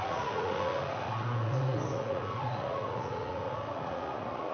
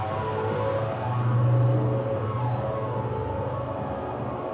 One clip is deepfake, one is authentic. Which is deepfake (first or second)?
first